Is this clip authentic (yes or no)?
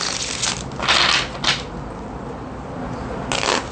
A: yes